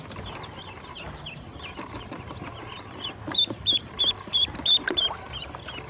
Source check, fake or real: fake